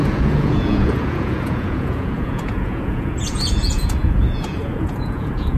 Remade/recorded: remade